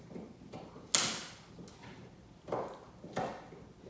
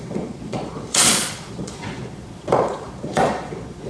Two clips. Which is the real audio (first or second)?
first